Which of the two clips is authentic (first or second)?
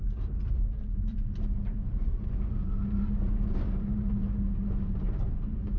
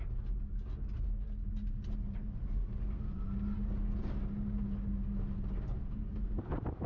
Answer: second